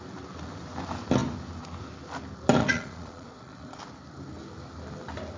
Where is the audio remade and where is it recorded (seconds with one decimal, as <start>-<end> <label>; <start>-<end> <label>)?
0.0-2.6 recorded; 2.6-3.8 remade; 3.8-5.4 recorded